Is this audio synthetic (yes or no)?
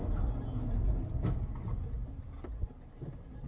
no